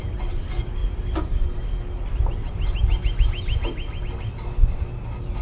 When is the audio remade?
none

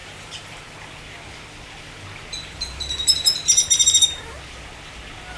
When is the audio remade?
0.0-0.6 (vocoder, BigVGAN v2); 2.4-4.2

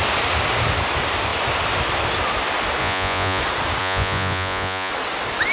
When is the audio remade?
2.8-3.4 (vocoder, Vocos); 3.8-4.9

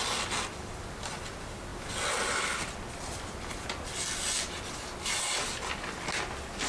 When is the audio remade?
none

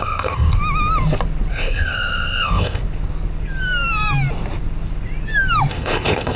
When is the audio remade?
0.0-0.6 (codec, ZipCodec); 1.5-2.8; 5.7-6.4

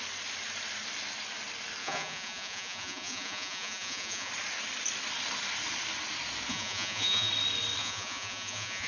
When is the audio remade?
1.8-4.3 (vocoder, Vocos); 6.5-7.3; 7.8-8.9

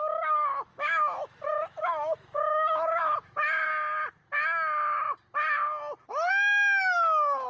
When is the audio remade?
0.0-3.7 (autoencoder, DAC-VAE); 6.3-7.5

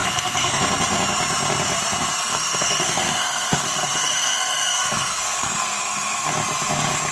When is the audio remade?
0.0-0.6 (codec, SNAC); 2.3-6.3